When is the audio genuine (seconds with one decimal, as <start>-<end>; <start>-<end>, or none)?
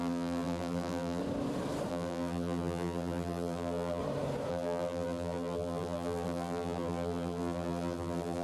1.2-1.9; 4.0-4.5